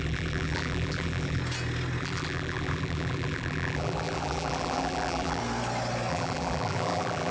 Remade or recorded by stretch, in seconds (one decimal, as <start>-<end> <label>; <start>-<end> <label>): 0.0-1.4 remade; 1.4-2.0 recorded; 2.0-5.4 remade; 5.4-6.1 recorded; 6.1-7.3 remade